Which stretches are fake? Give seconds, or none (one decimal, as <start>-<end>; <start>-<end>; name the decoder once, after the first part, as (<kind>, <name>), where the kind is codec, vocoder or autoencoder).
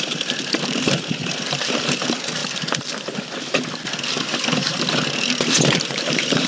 0.0-2.4 (vocoder, BigVGAN v2); 5.5-6.5